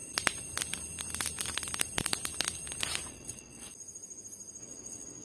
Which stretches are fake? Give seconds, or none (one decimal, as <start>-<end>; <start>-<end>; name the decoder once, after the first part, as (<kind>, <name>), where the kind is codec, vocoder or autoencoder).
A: 3.1-3.7 (vocoder, WaveNeXt); 4.6-5.2

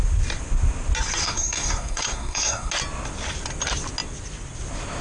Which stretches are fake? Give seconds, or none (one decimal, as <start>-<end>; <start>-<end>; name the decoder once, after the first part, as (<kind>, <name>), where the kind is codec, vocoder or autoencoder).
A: 1.2-2.7 (codec, SNAC)

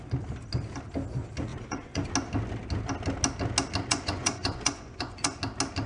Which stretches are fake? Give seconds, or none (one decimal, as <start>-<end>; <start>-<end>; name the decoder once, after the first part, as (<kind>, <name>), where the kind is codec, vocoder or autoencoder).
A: 1.5-2.1 (vocoder, Vocos); 3.9-5.4

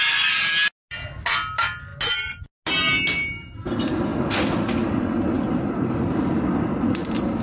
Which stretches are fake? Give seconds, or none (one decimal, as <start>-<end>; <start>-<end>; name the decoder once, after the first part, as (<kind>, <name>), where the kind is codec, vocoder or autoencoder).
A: none

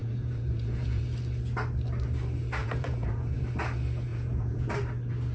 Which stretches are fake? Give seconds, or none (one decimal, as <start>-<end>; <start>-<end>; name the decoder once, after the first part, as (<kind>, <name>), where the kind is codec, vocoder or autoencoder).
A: 0.0-1.0 (vocoder, Vocos); 2.6-3.4; 4.1-4.7

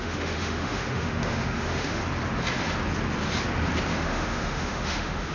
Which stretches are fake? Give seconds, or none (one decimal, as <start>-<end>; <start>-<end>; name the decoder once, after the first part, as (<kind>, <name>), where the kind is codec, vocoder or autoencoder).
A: 0.0-2.0 (autoencoder, DAC-VAE); 3.9-5.3